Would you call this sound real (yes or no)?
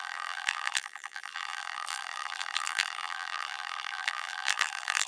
no